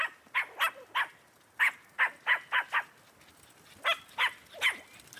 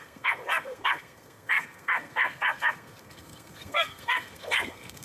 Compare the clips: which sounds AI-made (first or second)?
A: second